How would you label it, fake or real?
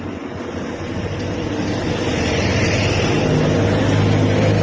real